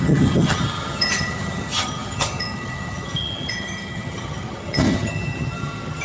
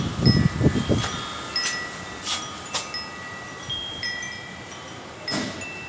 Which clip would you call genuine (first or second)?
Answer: second